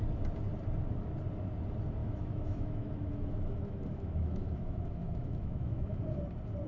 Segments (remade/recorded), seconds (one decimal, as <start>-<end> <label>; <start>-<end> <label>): 0.0-2.0 recorded; 2.0-6.0 remade; 6.0-6.7 recorded